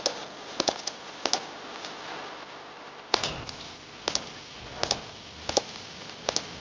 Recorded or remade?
recorded